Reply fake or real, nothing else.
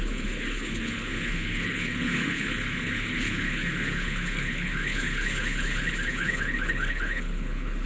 fake